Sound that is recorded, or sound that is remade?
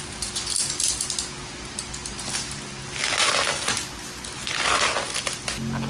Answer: recorded